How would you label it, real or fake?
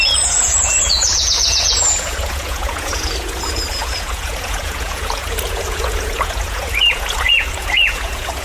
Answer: fake